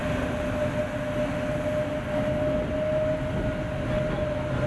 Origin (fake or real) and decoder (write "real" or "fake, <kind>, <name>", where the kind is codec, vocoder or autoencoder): real